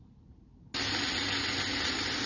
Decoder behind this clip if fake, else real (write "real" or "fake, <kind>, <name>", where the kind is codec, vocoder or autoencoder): real